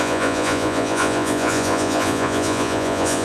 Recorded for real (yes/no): no